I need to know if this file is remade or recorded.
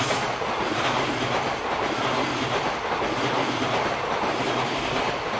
recorded